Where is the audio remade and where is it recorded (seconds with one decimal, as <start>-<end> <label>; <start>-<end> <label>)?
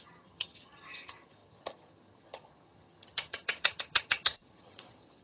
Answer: 0.0-5.2 remade